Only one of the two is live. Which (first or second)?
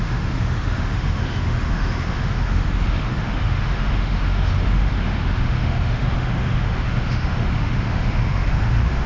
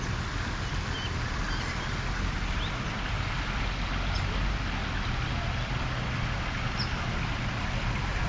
second